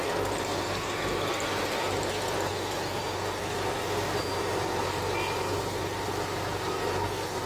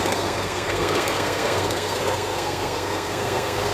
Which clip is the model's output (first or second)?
second